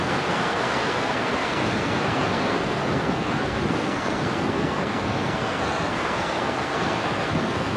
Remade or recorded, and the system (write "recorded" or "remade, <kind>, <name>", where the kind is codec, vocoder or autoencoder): remade, codec, SNAC